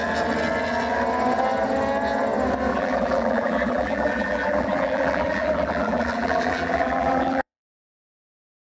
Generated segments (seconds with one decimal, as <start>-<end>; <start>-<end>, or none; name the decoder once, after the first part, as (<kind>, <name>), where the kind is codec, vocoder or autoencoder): 2.7-7.8 (vocoder, BigVGAN v2)